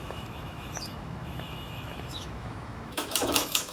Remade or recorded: remade